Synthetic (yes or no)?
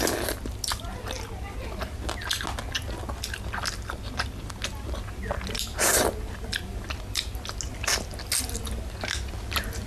no